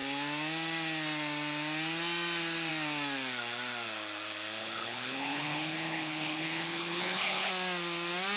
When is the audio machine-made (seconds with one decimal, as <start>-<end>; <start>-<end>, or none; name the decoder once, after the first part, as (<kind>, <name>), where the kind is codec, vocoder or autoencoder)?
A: 4.6-7.5 (codec, HILCodec)